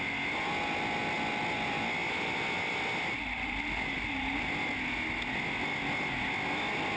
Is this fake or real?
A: real